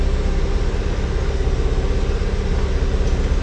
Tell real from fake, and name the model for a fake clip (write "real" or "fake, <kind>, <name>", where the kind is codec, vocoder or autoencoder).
real